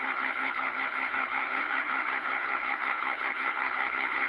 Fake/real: fake